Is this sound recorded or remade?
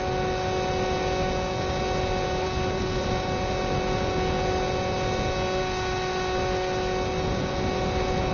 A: recorded